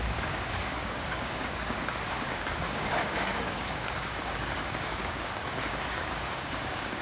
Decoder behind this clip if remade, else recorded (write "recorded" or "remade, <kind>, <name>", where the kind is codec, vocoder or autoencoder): remade, codec, DAC